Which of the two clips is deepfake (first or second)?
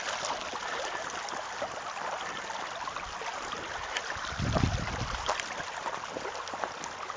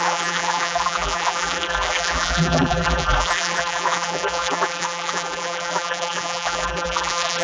second